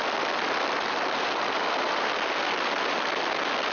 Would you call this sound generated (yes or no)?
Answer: no